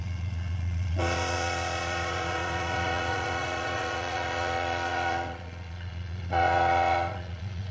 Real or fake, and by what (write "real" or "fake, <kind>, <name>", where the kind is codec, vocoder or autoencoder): fake, vocoder, Vocos